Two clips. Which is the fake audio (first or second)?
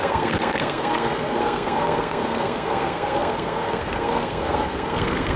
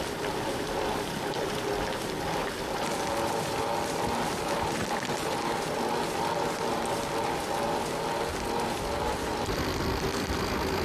first